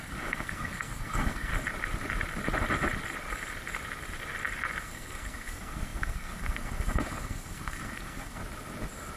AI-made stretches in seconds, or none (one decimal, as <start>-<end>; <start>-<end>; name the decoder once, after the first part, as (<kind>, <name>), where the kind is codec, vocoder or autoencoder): 0.0-1.5 (codec, SNAC); 4.8-8.4